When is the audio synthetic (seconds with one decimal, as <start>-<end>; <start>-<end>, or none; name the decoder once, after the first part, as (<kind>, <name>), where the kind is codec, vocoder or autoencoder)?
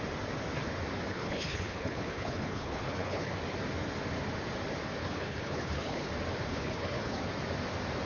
1.1-3.3 (codec, HILCodec); 5.0-6.1; 6.5-7.2